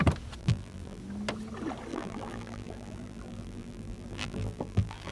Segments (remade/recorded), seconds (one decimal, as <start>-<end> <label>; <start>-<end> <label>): 0.0-0.4 recorded; 0.4-1.0 remade; 1.0-1.9 recorded; 1.9-5.1 remade